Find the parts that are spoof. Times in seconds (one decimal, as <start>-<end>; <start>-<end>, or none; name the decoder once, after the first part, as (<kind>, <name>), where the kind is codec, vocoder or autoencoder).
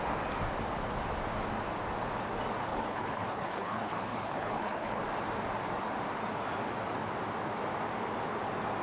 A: 2.7-5.0 (codec, HILCodec)